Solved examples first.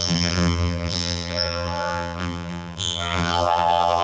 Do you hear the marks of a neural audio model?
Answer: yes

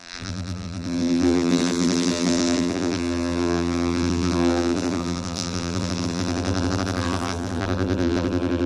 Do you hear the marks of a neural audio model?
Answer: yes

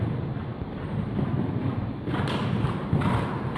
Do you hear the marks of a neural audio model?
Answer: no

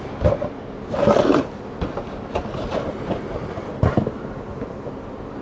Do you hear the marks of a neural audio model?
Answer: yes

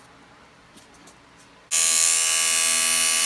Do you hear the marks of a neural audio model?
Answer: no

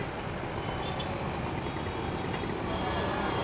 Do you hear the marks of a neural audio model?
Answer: no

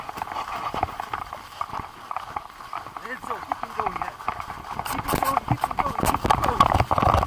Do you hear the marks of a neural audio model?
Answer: no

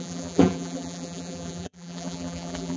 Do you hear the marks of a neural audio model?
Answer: yes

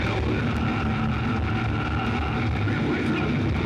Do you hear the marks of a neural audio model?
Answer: no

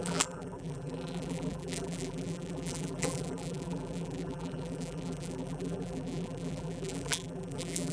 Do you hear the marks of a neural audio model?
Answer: yes